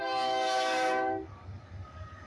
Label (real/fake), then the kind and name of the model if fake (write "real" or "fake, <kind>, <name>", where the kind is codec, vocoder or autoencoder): fake, codec, DAC